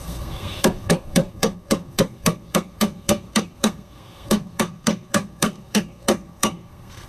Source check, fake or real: fake